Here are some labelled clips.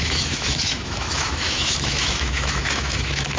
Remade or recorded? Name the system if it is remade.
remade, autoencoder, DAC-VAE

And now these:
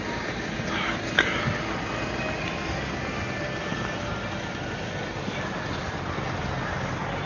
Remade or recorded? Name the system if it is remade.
recorded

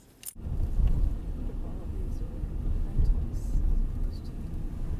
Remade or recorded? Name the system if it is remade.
recorded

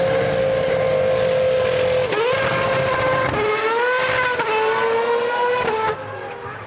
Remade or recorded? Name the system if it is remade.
recorded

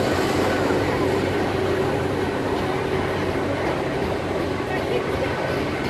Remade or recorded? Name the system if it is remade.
recorded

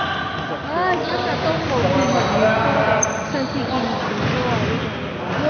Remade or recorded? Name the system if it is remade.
recorded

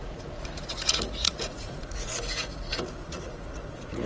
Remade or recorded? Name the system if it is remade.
remade, vocoder, Vocos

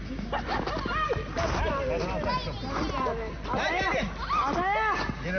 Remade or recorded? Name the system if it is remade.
recorded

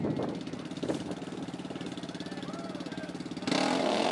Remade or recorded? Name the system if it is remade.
recorded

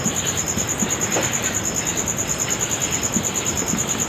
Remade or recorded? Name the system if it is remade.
recorded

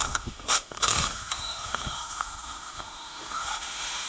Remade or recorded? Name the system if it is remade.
remade, autoencoder, DAC-VAE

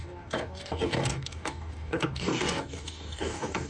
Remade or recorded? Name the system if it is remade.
remade, codec, DAC